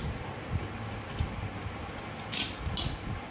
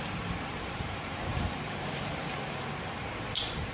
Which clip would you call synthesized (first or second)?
second